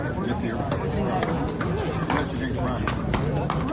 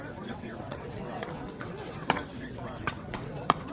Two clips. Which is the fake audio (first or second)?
second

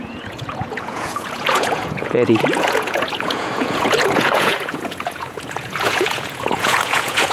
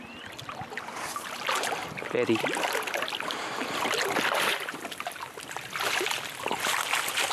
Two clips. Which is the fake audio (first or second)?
first